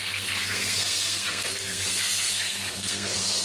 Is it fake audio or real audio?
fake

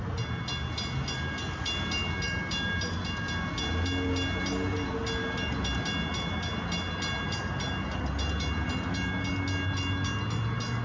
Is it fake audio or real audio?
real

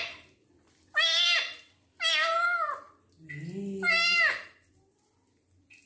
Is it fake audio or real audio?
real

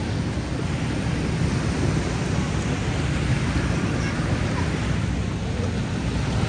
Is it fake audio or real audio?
real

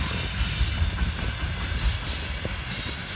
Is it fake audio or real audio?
real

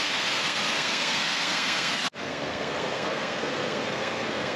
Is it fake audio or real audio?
fake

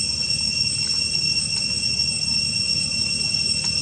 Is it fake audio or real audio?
real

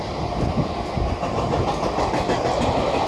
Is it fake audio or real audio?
real